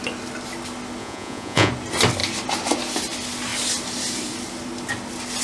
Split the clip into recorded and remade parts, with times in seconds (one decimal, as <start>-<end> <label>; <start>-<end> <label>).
0.0-1.0 recorded; 1.0-1.7 remade; 1.7-5.4 recorded